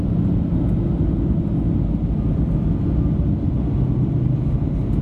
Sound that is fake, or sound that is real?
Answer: real